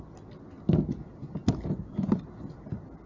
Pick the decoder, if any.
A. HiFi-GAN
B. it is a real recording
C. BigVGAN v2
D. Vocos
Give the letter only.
B